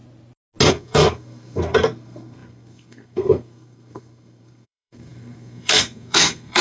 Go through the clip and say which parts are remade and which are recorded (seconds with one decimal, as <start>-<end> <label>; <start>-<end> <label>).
0.0-0.7 recorded; 0.7-6.6 remade